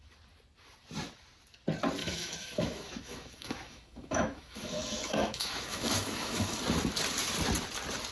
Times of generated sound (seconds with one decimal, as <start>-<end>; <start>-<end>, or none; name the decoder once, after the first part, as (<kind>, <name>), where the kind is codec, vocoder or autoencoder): 2.0-6.6 (autoencoder, DAC-VAE)